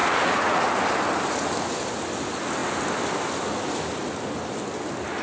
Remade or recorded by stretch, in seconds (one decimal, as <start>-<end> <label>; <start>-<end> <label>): 0.0-0.7 remade; 0.7-5.2 recorded

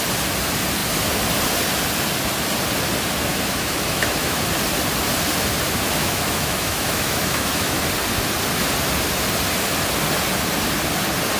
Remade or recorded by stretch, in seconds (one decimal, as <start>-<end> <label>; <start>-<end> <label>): 0.0-3.3 recorded; 3.3-4.4 remade; 4.4-6.0 recorded; 6.0-7.8 remade; 7.8-11.4 recorded

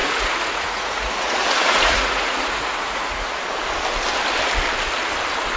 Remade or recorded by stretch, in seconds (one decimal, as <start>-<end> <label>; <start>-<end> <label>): 0.0-3.4 remade; 3.4-5.6 recorded

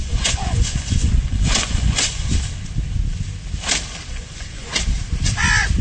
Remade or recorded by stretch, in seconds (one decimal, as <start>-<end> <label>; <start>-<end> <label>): 0.0-2.3 remade; 2.3-4.1 recorded; 4.1-4.7 remade; 4.7-5.8 recorded

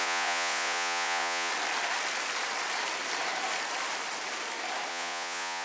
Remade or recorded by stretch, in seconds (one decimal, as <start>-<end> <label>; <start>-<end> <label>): 0.0-1.5 remade; 1.5-4.9 recorded; 4.9-5.6 remade

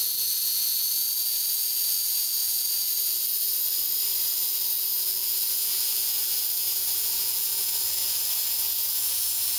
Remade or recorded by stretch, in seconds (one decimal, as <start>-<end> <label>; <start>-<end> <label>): 0.0-3.6 remade; 3.6-4.3 recorded; 4.3-9.6 remade